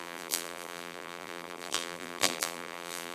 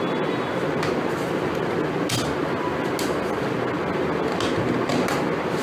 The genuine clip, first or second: second